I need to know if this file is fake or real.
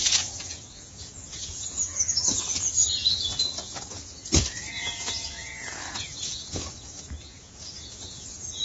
fake